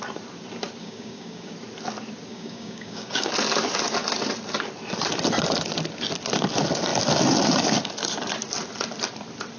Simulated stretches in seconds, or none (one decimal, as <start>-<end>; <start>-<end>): 0.8-1.5; 2.3-3.3